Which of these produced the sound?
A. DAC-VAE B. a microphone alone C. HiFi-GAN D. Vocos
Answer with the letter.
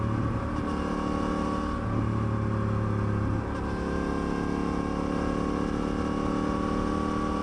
B